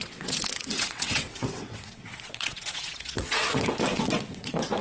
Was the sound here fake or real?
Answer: fake